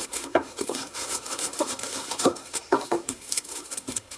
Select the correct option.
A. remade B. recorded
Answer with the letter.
A